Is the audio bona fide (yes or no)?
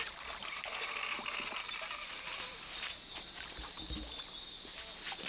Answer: yes